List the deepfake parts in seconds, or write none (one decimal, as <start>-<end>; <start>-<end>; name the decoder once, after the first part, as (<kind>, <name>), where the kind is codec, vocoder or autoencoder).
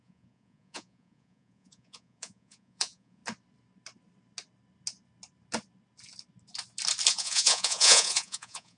0.0-3.2 (vocoder, Vocos); 7.1-8.8